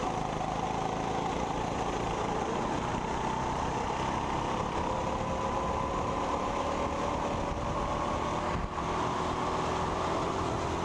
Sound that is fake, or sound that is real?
real